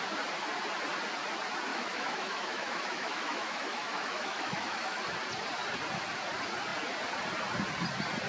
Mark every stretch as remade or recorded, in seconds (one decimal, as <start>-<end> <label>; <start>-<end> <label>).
0.0-1.7 recorded; 1.7-5.0 remade; 5.0-8.3 recorded